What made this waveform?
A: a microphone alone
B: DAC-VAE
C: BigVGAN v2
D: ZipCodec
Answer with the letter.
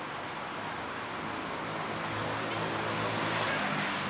A